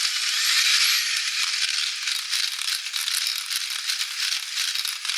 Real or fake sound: real